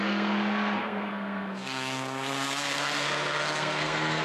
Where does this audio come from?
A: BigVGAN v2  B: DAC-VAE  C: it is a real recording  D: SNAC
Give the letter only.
D